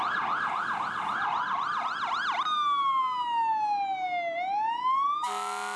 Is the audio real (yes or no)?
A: yes